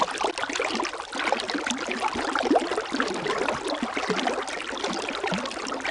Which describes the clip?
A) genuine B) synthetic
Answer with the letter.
A